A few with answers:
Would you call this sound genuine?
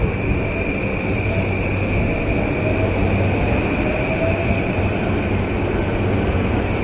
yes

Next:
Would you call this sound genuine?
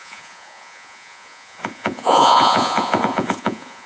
no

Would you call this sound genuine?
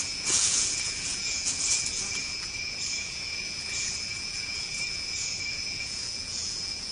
no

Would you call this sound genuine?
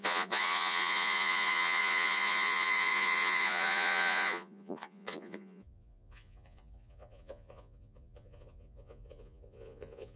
no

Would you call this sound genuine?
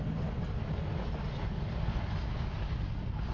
yes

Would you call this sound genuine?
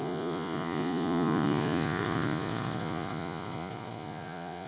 no